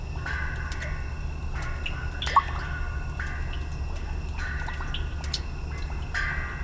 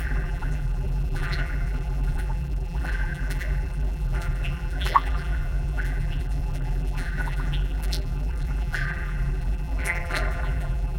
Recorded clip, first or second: first